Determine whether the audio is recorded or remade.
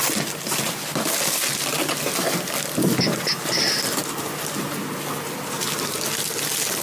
recorded